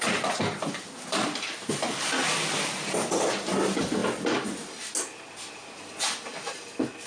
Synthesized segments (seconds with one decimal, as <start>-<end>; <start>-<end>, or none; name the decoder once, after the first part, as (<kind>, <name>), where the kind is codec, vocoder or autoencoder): none